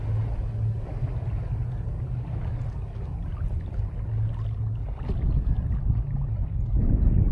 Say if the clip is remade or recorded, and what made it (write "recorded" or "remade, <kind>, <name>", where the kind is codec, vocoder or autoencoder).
recorded